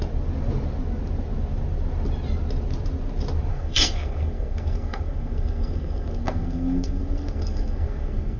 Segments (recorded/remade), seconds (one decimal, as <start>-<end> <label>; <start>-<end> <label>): 0.0-3.5 recorded; 3.5-8.4 remade